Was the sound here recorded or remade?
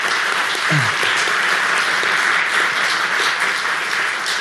recorded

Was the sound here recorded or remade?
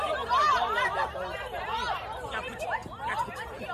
recorded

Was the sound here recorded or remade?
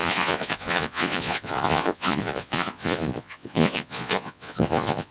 remade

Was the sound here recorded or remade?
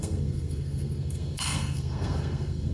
remade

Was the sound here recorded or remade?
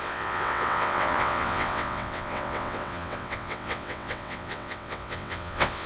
remade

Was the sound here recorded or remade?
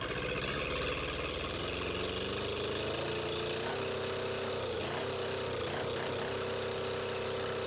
recorded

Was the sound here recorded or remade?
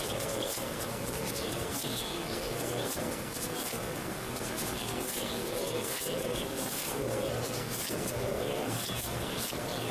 remade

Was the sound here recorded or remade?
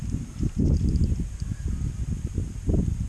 recorded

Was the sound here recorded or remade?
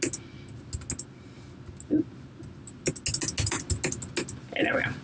recorded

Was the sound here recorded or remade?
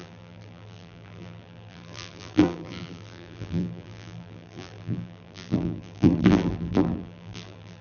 remade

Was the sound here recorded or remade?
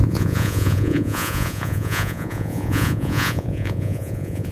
remade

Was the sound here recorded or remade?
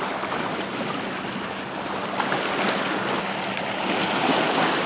recorded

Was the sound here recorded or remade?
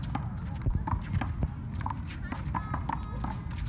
recorded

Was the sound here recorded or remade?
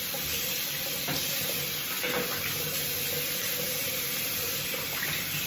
recorded